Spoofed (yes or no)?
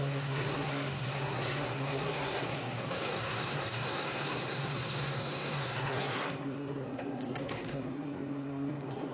yes